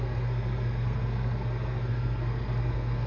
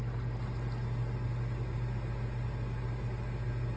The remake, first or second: first